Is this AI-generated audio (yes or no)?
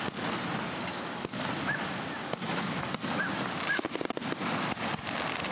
no